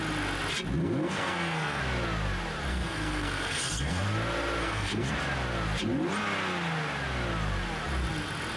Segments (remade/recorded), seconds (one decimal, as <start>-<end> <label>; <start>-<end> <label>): 0.0-0.8 recorded; 0.8-1.8 remade; 1.8-2.7 recorded; 2.7-4.0 remade; 4.0-4.6 recorded; 4.6-5.1 remade; 5.1-8.6 recorded